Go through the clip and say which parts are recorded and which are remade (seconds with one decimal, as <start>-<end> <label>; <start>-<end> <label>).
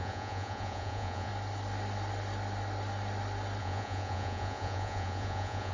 0.0-1.3 remade; 1.3-3.6 recorded; 3.6-5.7 remade